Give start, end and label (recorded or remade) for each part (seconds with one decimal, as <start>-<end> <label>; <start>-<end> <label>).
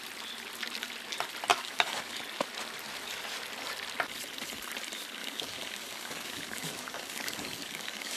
0.0-1.5 recorded; 1.5-2.2 remade; 2.2-5.2 recorded; 5.2-8.2 remade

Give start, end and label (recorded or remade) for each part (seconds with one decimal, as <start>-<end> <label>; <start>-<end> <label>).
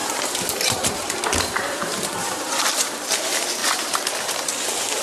0.0-3.0 remade; 3.0-5.0 recorded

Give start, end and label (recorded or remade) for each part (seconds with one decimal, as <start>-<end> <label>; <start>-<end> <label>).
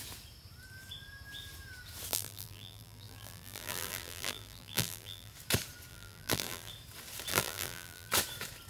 0.0-2.1 recorded; 2.1-5.3 remade; 5.3-5.9 recorded; 5.9-6.7 remade; 6.7-7.3 recorded; 7.3-8.1 remade; 8.1-8.7 recorded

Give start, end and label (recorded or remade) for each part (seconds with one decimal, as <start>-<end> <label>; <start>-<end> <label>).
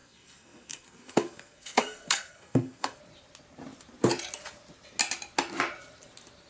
0.0-3.0 remade; 3.0-6.5 recorded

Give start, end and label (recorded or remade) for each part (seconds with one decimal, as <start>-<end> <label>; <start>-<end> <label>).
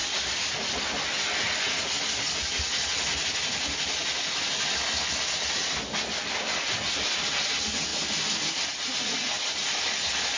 0.0-10.4 recorded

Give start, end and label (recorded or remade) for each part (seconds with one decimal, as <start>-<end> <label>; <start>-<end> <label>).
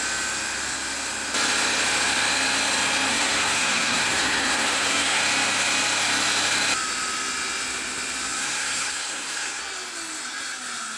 0.0-3.1 recorded; 3.1-5.2 remade; 5.2-8.4 recorded; 8.4-9.6 remade; 9.6-11.0 recorded